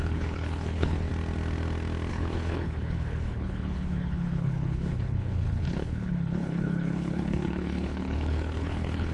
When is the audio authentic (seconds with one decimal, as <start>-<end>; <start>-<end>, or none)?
1.1-2.1